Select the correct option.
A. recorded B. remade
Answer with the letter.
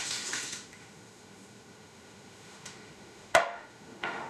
B